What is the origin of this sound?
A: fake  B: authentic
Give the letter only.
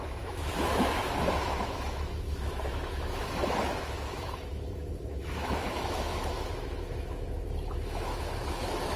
A